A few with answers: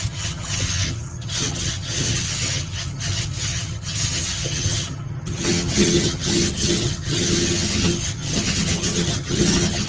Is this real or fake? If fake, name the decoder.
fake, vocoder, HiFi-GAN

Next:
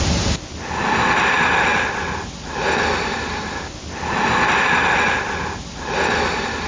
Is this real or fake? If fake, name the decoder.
real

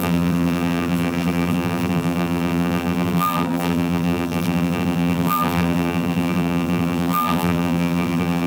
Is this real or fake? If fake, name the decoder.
fake, vocoder, BigVGAN v2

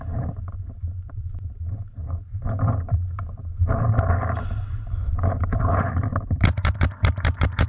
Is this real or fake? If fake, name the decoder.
fake, vocoder, BigVGAN v2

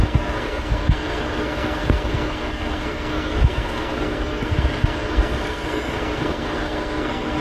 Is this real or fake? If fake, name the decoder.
fake, codec, SNAC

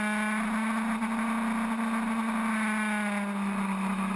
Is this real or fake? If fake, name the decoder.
real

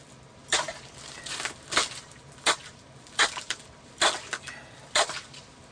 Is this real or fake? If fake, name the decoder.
real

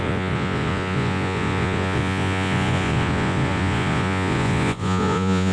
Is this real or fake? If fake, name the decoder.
fake, vocoder, Vocos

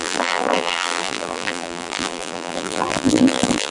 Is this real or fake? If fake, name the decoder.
fake, vocoder, BigVGAN v2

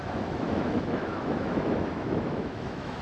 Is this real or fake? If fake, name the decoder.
fake, autoencoder, DAC-VAE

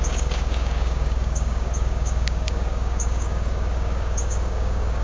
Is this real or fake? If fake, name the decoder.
fake, codec, DAC